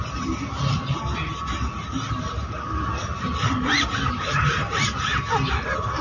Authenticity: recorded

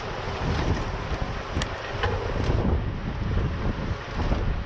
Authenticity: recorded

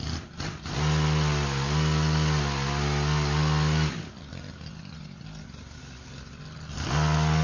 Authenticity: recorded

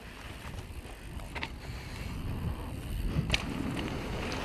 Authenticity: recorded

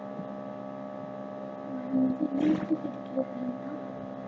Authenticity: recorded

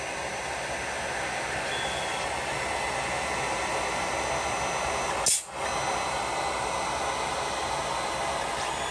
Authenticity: recorded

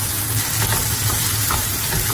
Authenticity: recorded